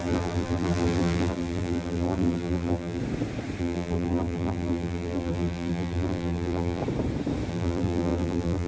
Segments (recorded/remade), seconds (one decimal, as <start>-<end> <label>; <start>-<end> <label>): 0.0-3.0 remade; 3.0-3.6 recorded; 3.6-6.8 remade; 6.8-7.5 recorded; 7.5-8.7 remade

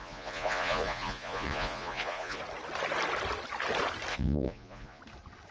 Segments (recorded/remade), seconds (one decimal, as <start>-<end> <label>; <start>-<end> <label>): 0.0-2.4 remade; 2.4-4.1 recorded; 4.1-5.0 remade; 5.0-5.5 recorded

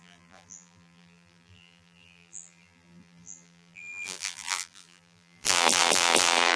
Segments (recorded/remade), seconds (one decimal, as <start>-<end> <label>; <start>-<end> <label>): 0.0-6.6 remade

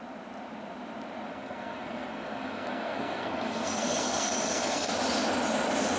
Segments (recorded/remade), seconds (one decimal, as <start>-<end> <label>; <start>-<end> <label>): 0.0-1.3 recorded; 1.3-4.9 remade; 4.9-6.0 recorded

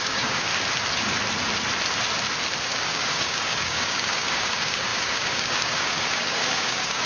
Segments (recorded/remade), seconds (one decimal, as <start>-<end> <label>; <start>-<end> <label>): 0.0-0.5 remade; 0.5-2.6 recorded; 2.6-7.1 remade

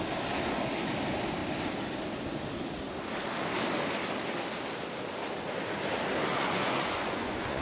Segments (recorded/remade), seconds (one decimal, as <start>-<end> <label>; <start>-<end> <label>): 0.0-6.3 recorded; 6.3-7.6 remade